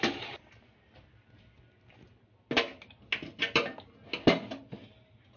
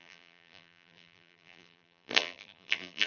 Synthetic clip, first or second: second